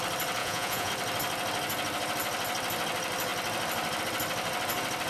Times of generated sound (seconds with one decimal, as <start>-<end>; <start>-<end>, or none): 0.4-0.9